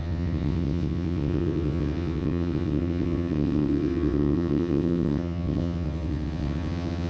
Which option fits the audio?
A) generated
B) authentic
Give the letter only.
A